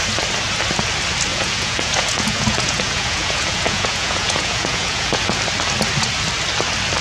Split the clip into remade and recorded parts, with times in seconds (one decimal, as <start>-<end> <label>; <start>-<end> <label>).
0.0-1.3 recorded; 1.3-5.4 remade; 5.4-7.0 recorded